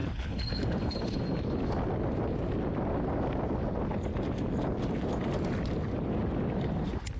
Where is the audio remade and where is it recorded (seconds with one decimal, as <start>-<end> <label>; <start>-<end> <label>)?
0.0-1.2 remade; 1.2-7.2 recorded